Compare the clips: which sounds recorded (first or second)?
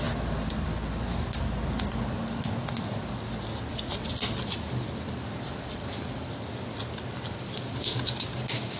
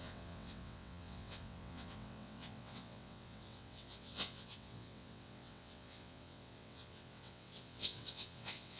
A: first